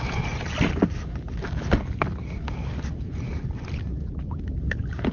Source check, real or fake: real